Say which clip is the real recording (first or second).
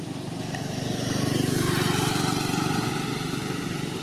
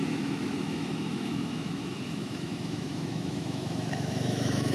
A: first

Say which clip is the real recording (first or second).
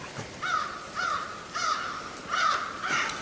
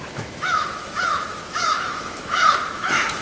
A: first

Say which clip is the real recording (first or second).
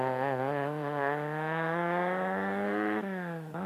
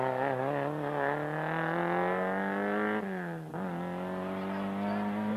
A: second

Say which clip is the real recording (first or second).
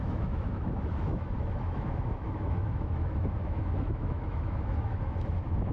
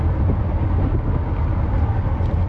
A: second